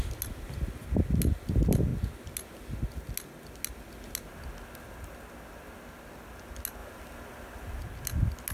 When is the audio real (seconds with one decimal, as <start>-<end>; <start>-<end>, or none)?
0.0-8.5

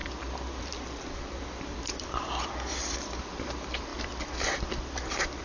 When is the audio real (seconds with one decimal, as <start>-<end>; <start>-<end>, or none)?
3.2-3.9

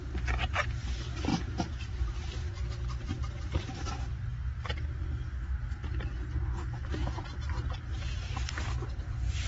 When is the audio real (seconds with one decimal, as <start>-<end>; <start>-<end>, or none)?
0.0-1.3; 3.9-9.5

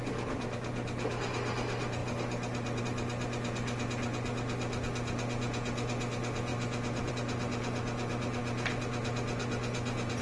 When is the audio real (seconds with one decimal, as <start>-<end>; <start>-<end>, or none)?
0.0-6.5; 7.1-10.2

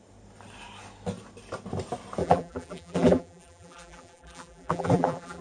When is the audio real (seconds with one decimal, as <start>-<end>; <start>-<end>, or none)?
0.0-2.2

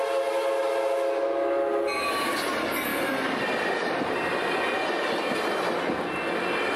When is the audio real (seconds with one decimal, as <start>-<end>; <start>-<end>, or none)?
0.0-2.9; 3.9-6.8

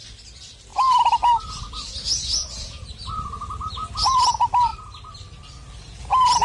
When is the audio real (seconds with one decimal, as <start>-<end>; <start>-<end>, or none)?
0.0-2.4; 3.1-4.7; 6.0-6.4